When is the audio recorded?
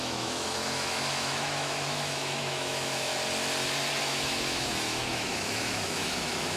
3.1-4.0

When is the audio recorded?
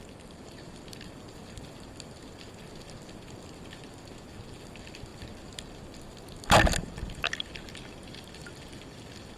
0.0-9.4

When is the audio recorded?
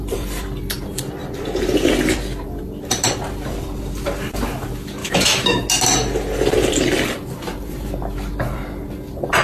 0.0-5.0; 5.6-9.4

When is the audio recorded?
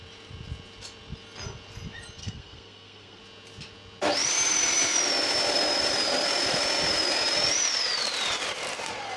0.0-2.2; 3.2-9.2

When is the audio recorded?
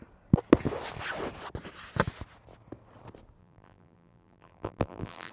0.0-3.4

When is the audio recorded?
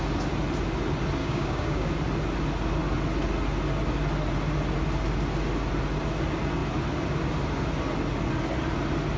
0.0-1.2; 1.9-9.2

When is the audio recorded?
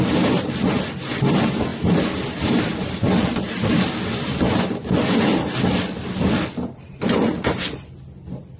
0.0-8.6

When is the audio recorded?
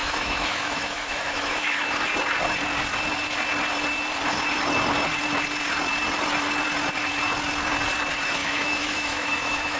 1.9-8.4